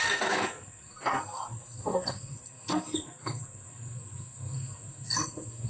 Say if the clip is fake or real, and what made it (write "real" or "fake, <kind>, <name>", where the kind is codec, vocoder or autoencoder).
fake, codec, SNAC